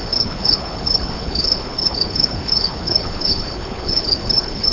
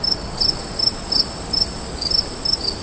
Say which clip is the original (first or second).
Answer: second